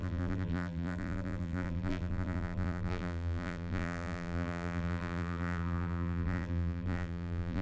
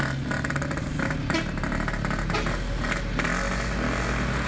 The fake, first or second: first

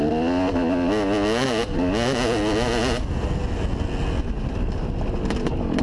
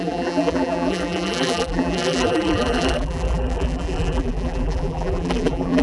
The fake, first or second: second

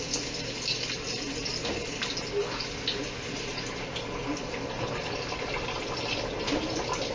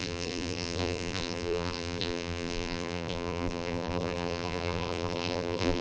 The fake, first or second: second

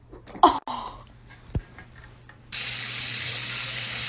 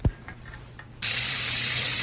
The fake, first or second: second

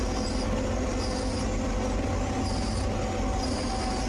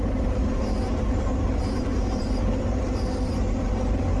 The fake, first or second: second